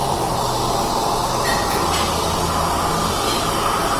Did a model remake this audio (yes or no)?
no